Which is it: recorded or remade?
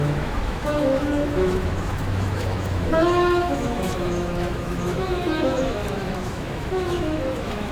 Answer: remade